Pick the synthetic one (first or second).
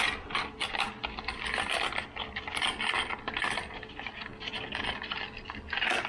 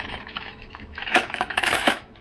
second